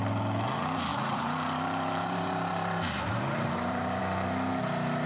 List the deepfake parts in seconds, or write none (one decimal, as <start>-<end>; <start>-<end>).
0.9-4.0